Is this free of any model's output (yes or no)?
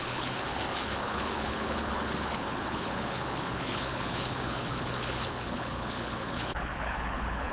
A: no